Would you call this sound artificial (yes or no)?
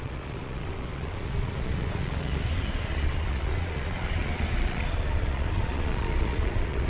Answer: yes